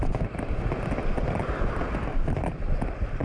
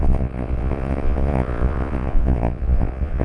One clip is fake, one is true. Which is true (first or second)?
first